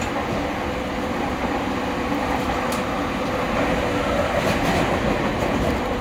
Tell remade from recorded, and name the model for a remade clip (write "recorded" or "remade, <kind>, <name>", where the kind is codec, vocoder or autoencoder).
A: recorded